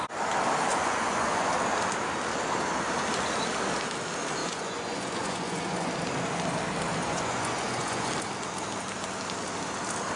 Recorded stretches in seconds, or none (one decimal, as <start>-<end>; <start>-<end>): 0.0-0.7; 1.5-4.4; 5.9-7.0; 8.1-10.2